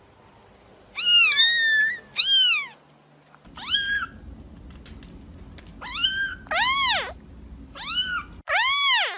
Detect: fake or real real